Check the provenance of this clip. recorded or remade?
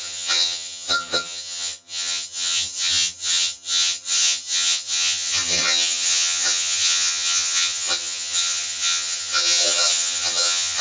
remade